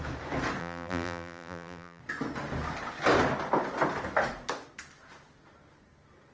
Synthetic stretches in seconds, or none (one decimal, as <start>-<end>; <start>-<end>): 0.6-2.0